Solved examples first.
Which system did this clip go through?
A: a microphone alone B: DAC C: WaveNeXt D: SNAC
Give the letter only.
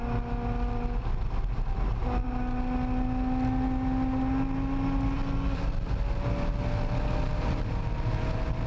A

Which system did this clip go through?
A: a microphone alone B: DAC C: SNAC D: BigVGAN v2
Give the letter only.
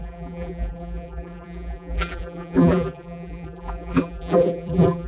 D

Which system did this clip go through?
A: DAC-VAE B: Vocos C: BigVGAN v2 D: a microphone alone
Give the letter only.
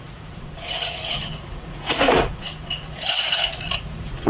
B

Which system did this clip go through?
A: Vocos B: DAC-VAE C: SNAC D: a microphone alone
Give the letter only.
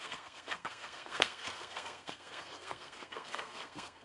C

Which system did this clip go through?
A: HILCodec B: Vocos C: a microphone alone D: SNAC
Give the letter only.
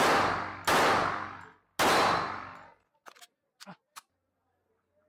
C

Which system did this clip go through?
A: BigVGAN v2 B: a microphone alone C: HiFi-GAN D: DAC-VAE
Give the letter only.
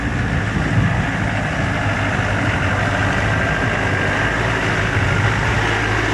B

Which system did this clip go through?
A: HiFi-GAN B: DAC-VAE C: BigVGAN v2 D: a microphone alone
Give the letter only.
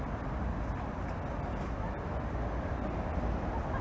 D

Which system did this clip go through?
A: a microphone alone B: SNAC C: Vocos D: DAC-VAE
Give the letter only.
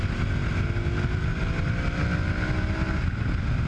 A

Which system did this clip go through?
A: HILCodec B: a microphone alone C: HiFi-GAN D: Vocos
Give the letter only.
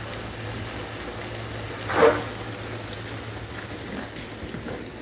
B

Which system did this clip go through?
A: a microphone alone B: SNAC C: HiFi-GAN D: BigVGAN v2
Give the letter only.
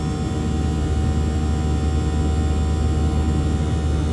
A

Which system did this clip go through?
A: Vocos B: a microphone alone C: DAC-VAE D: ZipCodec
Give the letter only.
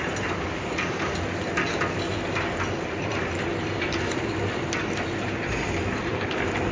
B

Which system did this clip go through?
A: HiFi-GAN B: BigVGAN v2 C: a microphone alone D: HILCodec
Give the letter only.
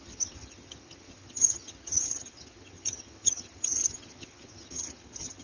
A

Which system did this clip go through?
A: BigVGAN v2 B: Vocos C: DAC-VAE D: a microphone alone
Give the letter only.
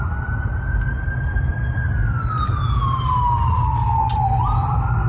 D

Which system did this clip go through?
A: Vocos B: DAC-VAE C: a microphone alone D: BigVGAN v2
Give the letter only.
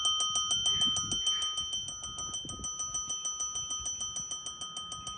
C